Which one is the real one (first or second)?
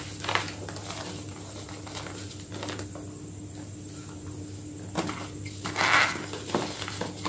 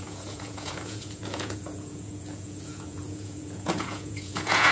first